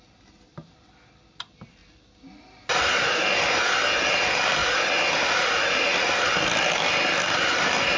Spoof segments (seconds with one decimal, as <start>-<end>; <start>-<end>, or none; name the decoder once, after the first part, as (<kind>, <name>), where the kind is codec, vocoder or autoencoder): none